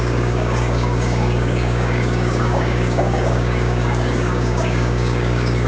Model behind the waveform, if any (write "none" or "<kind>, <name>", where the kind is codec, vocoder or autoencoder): codec, DAC